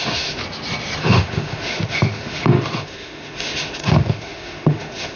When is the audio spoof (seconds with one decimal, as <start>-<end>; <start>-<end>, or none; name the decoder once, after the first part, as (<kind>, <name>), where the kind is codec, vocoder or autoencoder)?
0.0-0.4 (autoencoder, DAC-VAE); 1.0-5.2